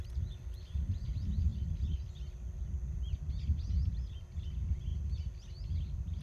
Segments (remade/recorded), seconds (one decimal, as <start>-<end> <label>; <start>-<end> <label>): 0.0-6.2 recorded